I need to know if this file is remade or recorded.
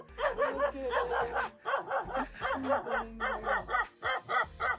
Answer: recorded